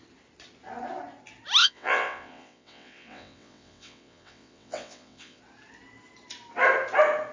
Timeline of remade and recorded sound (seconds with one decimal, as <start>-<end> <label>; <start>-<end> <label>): 0.0-1.6 recorded; 1.6-5.4 remade; 5.4-7.3 recorded